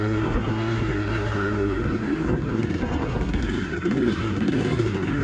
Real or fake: fake